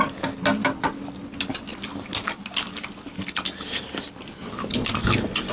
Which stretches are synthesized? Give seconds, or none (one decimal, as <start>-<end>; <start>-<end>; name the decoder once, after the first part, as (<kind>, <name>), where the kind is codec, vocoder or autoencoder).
none